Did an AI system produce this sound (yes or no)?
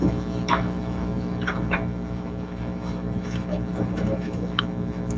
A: yes